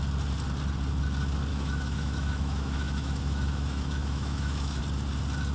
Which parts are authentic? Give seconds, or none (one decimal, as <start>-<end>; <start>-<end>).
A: 0.0-1.5; 4.8-5.5